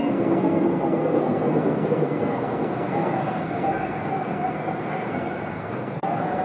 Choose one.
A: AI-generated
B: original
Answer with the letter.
A